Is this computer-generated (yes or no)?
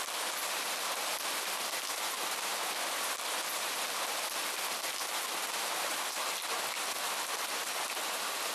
no